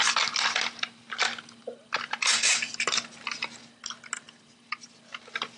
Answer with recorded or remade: recorded